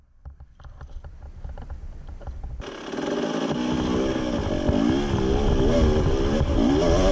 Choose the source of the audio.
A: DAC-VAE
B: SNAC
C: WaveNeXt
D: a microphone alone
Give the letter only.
D